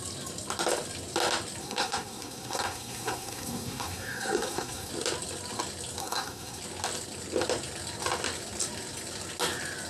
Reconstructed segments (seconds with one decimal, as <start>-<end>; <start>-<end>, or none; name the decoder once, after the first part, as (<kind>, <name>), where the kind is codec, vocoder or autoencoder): 1.6-4.9 (codec, SNAC); 6.0-6.6